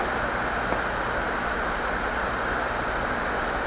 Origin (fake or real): real